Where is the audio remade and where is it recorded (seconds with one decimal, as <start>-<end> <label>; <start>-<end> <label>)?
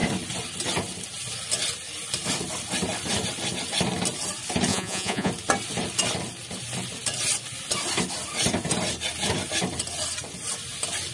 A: 0.0-4.7 recorded; 4.7-5.3 remade; 5.3-11.1 recorded